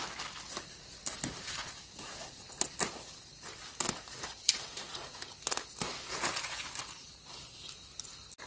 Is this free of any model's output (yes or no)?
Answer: yes